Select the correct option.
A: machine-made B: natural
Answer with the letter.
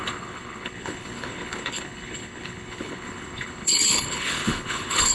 A